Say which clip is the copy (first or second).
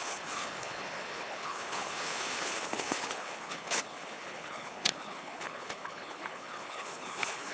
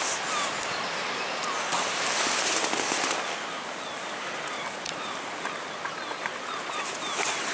first